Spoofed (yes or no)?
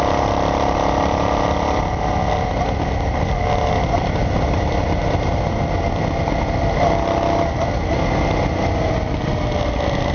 no